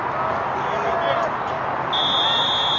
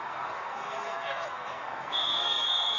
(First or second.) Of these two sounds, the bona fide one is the first